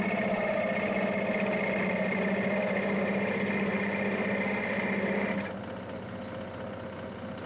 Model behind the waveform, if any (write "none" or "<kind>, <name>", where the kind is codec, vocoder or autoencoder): none